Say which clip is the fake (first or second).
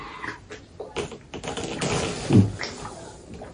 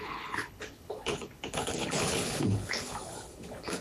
second